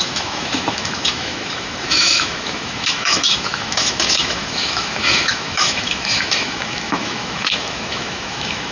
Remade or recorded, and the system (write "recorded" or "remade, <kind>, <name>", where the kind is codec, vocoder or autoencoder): remade, autoencoder, DAC-VAE